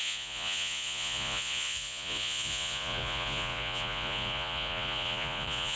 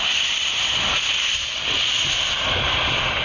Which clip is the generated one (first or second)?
first